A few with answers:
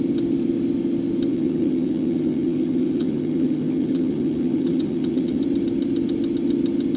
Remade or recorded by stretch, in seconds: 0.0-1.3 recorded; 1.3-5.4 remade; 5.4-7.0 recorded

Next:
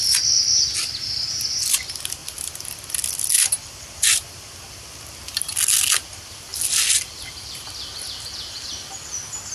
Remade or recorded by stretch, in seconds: 0.0-9.5 recorded